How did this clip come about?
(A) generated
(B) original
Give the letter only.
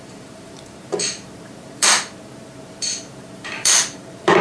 A